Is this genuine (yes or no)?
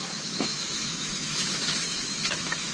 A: no